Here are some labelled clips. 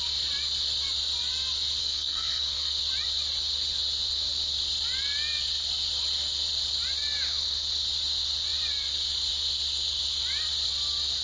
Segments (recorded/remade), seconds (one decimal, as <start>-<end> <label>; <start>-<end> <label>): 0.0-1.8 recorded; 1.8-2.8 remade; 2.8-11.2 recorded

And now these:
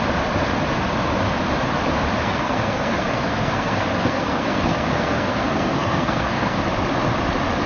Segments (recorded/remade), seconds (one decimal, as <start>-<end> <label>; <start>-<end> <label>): 0.0-2.2 recorded; 2.2-6.6 remade; 6.6-7.7 recorded

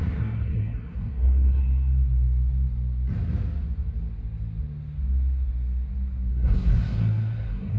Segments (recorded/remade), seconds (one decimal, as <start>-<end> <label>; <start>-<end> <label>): 0.0-1.6 remade; 1.6-6.3 recorded; 6.3-7.8 remade

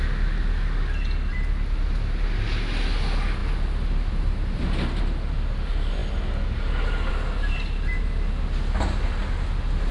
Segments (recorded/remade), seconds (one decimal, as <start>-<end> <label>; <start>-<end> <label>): 0.0-9.9 recorded

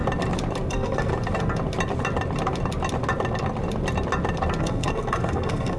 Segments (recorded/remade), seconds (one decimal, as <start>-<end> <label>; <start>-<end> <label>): 0.0-0.7 recorded; 0.7-1.1 remade; 1.1-4.6 recorded; 4.6-5.8 remade

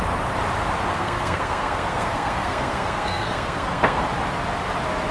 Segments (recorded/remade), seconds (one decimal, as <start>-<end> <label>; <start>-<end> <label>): 0.0-0.9 recorded; 0.9-4.0 remade; 4.0-5.1 recorded